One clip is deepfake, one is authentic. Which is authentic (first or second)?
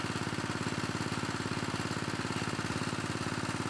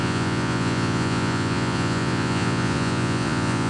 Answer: first